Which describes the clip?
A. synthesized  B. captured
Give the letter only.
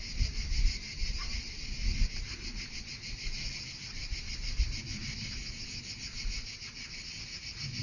B